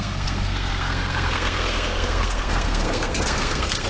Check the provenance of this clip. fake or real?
fake